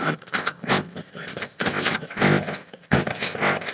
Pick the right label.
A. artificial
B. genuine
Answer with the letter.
A